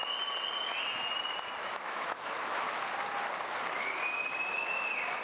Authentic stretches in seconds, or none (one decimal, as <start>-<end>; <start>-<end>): 0.0-1.6; 2.8-5.2

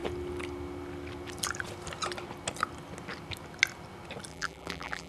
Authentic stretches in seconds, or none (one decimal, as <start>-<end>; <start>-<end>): 0.0-4.3

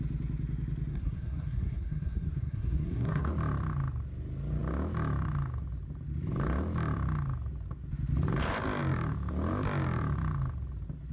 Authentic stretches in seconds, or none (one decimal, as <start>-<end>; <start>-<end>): 0.0-0.9; 3.3-11.1

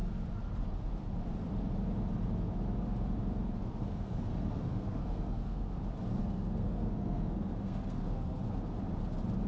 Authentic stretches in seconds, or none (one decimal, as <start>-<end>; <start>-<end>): 0.0-3.6; 5.8-6.2; 8.4-9.5

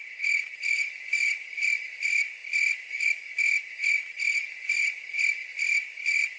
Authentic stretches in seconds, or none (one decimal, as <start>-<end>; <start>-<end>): 2.4-3.6